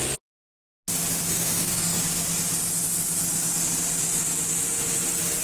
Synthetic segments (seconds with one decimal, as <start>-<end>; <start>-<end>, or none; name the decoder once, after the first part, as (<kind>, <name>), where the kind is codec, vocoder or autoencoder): 1.3-2.0 (codec, DAC)